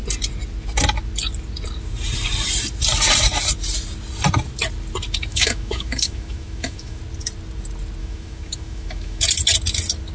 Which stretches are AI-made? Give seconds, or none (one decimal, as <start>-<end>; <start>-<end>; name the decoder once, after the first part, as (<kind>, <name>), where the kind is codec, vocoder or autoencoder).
5.3-7.0 (autoencoder, DAC-VAE); 8.0-9.2